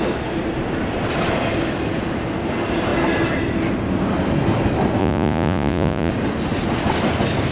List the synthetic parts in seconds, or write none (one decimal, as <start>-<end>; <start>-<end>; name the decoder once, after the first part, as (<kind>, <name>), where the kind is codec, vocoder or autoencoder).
5.0-6.1 (vocoder, Vocos)